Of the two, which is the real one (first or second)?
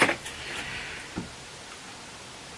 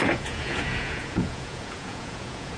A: first